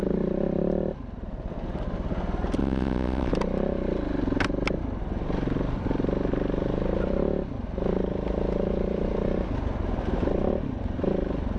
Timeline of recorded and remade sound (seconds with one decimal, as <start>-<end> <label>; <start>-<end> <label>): 0.0-2.6 recorded; 2.6-3.3 remade; 3.3-11.6 recorded